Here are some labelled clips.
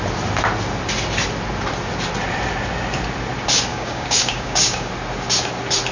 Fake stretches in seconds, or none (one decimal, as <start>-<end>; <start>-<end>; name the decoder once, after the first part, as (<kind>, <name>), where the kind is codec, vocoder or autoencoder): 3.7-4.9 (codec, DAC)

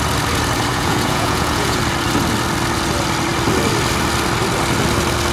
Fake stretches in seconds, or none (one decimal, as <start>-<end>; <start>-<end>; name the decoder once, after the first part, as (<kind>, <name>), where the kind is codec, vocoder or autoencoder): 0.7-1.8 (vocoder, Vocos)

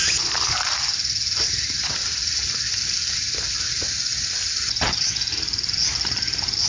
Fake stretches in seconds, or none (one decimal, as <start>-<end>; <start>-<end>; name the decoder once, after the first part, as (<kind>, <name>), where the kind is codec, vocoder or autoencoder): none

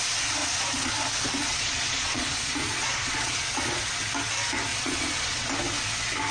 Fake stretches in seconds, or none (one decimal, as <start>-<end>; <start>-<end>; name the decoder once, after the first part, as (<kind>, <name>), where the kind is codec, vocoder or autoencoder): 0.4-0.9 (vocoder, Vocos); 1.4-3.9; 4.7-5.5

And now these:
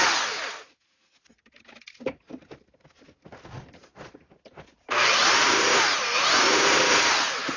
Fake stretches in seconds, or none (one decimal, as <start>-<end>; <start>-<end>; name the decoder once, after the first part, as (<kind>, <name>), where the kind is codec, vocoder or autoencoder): none

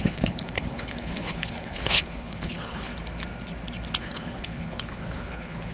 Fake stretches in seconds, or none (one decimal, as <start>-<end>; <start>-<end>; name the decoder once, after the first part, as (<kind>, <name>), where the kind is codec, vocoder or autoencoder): 0.0-2.9 (codec, HILCodec); 4.0-5.7